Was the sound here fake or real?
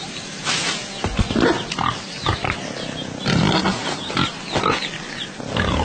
real